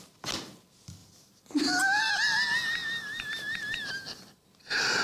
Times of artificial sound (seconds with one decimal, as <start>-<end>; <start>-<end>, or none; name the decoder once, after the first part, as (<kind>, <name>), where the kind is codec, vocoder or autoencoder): 1.0-2.1 (vocoder, BigVGAN v2); 2.8-3.8